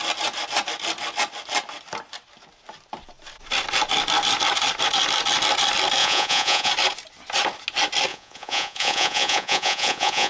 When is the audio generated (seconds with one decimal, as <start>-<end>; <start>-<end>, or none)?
6.0-6.7; 8.1-10.3